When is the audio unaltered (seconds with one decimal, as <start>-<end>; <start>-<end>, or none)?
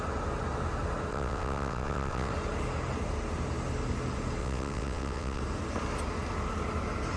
0.0-1.1; 2.3-4.4; 5.4-7.2